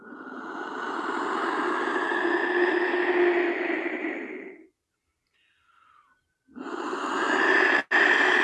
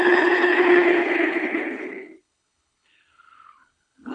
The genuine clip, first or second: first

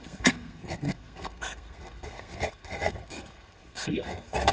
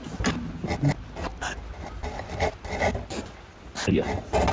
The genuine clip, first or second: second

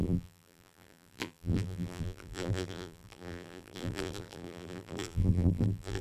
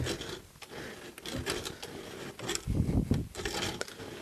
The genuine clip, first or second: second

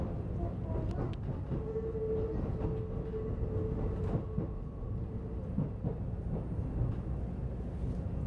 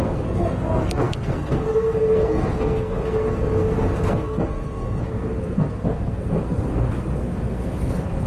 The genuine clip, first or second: first